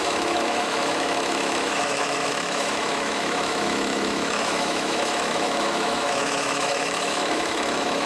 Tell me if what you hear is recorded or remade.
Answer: remade